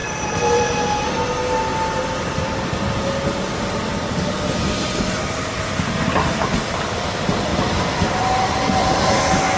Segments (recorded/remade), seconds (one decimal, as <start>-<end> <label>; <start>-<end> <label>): 0.0-0.6 remade; 0.6-9.6 recorded